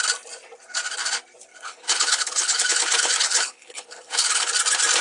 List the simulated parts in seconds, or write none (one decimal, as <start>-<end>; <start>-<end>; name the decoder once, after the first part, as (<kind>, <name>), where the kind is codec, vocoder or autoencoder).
1.5-4.5 (codec, HILCodec)